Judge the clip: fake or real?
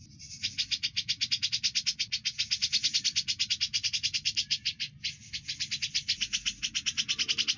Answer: real